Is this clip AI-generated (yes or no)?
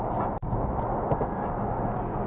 no